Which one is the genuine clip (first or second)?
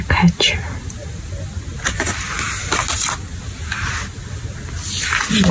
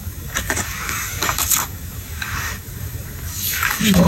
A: first